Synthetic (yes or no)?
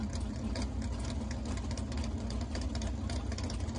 no